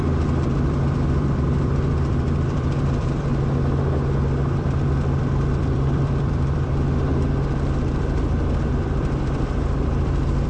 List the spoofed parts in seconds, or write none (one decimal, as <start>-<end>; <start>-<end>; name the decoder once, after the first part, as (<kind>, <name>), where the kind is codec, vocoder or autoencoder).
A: 0.0-3.3 (vocoder, BigVGAN v2); 4.5-7.1; 8.7-10.5